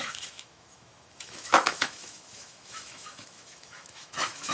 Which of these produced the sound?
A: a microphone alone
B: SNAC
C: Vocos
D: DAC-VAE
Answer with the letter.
D